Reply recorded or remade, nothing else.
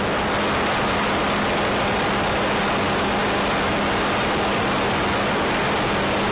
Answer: recorded